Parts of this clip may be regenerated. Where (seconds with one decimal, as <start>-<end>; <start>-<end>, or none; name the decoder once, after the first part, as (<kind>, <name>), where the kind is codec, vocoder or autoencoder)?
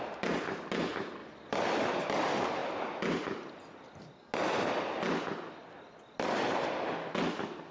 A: none